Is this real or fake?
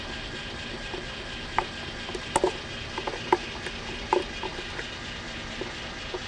real